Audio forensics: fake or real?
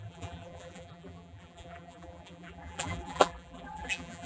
fake